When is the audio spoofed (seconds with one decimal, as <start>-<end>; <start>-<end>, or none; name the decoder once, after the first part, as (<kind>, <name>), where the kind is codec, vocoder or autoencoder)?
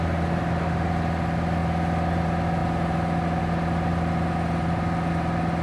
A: none